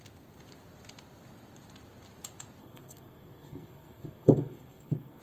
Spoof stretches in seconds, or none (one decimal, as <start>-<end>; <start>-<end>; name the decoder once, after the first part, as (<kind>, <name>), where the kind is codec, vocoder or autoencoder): 2.6-5.2 (codec, SNAC)